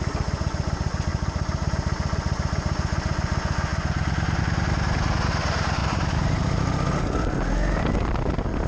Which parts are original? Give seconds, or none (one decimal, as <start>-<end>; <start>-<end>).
0.0-1.1; 1.7-5.8; 6.6-8.7